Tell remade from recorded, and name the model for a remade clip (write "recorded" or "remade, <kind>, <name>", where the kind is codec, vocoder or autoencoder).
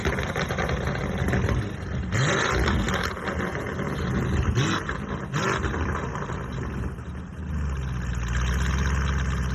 recorded